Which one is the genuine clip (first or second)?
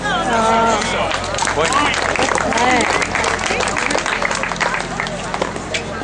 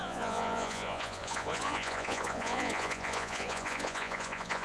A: first